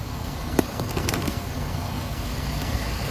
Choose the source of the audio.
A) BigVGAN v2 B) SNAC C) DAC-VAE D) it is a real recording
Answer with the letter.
B